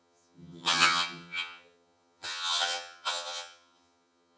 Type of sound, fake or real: fake